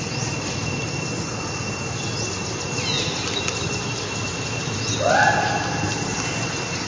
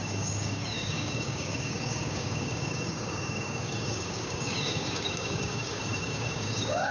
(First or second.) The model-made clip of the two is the second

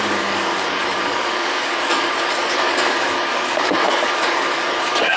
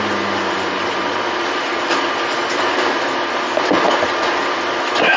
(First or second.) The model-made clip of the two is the first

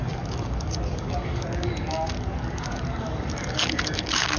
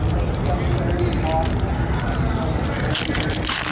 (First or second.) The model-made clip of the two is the first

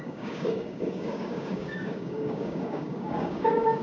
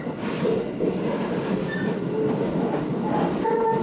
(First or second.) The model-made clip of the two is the first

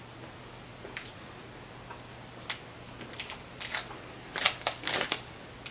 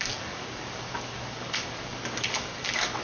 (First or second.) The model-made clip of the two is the second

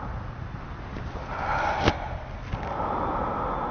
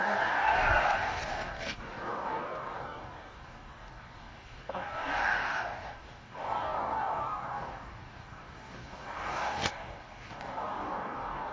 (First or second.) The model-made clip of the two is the second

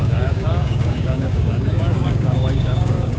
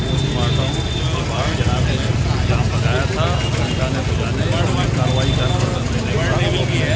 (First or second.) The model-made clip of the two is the first